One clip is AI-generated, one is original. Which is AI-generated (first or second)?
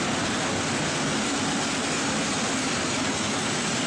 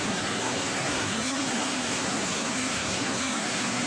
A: second